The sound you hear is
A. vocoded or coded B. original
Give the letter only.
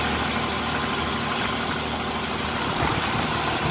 B